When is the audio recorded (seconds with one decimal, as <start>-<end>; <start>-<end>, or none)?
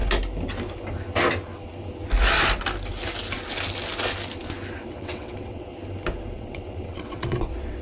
0.0-4.7; 5.7-6.3